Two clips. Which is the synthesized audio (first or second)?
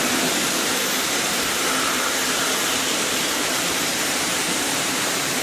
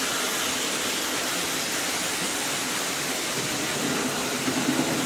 first